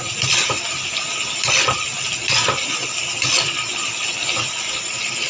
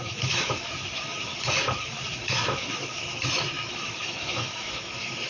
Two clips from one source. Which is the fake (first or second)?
second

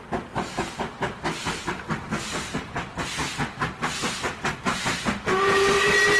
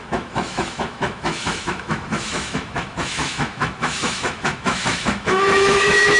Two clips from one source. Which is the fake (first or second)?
second